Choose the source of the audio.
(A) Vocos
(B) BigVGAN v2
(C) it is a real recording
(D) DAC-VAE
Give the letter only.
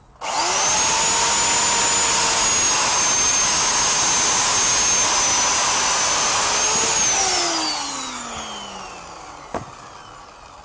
C